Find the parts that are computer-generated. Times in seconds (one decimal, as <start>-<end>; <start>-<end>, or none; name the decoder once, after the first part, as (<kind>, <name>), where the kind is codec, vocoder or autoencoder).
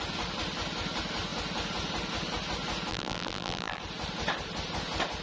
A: 2.9-3.8 (vocoder, BigVGAN v2)